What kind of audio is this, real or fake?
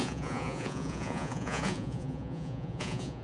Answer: fake